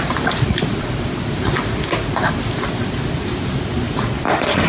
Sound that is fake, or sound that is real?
fake